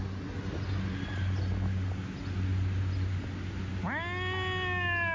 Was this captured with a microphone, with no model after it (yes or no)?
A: yes